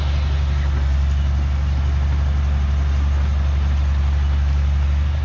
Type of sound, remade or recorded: recorded